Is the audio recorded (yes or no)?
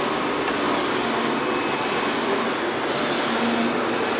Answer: yes